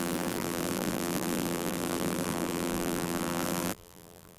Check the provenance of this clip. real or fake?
fake